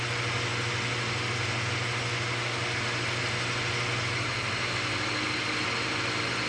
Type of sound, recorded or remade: recorded